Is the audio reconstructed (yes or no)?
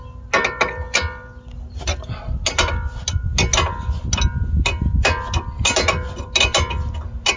no